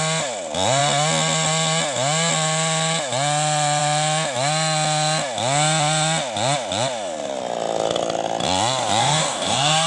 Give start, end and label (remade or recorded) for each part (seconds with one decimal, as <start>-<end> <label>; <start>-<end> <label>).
0.0-9.0 recorded; 9.0-9.9 remade